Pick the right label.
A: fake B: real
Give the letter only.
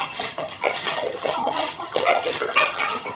A